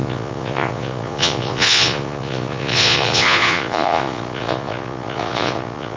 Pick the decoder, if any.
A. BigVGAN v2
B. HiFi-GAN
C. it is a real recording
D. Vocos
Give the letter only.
D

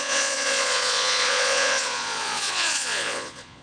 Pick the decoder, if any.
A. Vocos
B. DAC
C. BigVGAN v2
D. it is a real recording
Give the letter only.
A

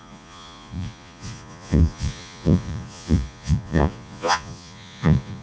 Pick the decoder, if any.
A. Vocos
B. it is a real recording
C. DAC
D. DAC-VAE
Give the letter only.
A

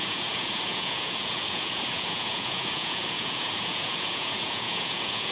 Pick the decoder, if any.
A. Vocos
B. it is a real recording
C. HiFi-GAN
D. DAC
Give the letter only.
A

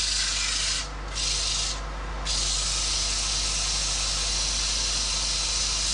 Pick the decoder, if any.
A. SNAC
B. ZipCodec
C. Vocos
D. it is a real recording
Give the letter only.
D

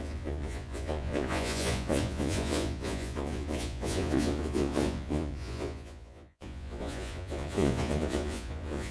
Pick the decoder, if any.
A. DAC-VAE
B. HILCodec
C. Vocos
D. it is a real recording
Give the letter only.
C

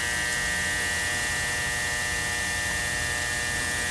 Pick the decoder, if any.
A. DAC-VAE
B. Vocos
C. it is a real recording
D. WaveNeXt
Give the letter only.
C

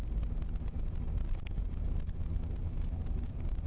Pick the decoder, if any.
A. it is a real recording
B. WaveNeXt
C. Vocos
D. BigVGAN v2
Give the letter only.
A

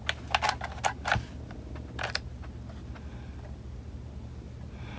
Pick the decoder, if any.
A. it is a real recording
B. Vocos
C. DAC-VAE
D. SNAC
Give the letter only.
A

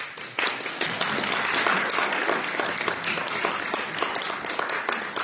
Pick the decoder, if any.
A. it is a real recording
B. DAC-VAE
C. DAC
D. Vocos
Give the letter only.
A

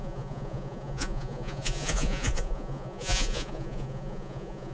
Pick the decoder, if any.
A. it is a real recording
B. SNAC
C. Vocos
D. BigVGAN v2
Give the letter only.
C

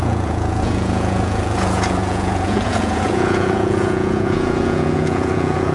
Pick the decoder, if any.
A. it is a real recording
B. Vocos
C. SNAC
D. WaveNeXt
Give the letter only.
B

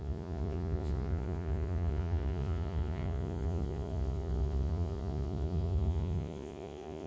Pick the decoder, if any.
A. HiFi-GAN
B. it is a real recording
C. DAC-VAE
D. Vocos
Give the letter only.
D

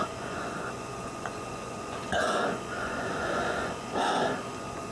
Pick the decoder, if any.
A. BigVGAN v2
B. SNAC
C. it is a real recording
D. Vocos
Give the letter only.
D